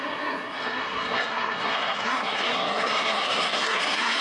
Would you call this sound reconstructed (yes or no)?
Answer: yes